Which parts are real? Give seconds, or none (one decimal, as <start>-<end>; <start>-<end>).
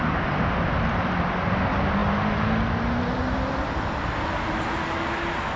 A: 0.0-5.6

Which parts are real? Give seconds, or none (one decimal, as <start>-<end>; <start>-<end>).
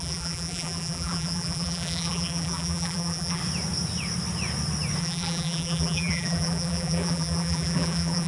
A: 3.4-5.0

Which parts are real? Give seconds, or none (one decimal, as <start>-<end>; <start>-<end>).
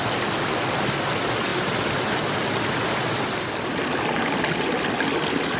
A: 0.0-5.6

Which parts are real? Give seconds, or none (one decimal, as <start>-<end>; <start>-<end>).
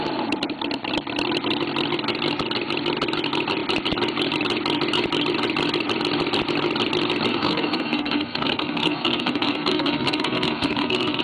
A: 0.0-7.3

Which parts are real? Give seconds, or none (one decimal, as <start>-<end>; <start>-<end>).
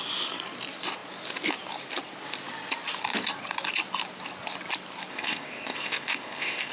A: 0.0-5.1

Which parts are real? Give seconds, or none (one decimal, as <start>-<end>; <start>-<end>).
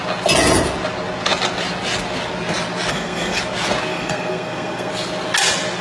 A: 0.0-2.9; 3.4-3.9; 4.9-5.8